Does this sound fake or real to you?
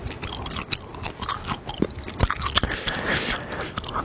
real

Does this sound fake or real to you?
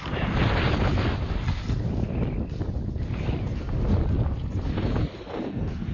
real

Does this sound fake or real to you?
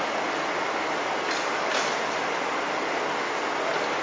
real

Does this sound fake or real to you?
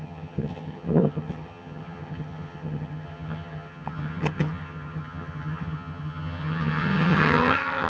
fake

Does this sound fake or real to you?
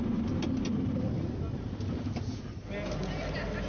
real